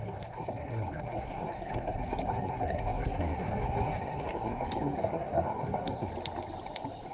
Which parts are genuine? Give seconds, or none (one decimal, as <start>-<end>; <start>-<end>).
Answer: 6.1-7.1